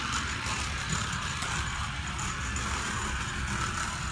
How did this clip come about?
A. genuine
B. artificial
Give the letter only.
A